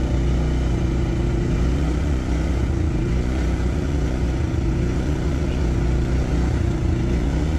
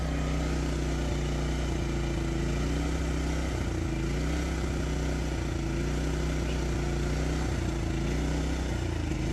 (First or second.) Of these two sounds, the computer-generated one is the first